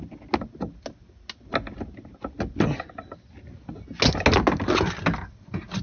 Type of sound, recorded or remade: recorded